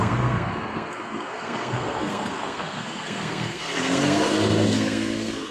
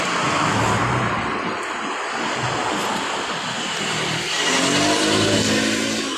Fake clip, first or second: first